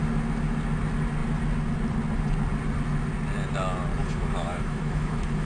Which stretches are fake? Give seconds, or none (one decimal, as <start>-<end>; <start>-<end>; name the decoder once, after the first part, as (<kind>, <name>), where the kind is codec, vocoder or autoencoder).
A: 4.0-5.5 (autoencoder, DAC-VAE)